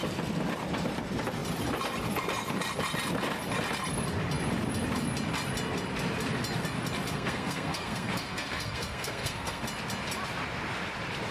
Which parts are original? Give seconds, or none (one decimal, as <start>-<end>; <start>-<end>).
0.0-7.1; 9.6-11.3